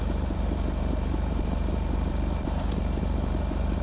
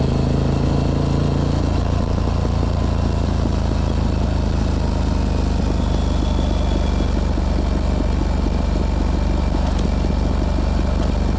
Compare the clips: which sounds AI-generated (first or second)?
first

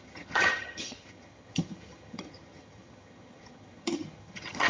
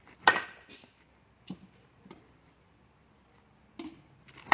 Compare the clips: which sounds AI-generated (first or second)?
first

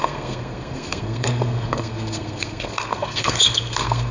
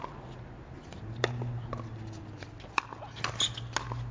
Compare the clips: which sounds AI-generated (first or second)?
first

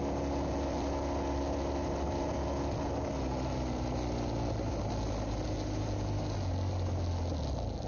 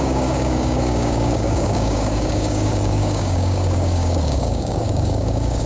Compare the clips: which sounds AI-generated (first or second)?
second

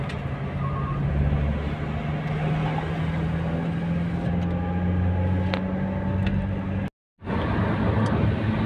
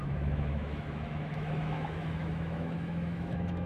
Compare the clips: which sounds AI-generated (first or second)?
second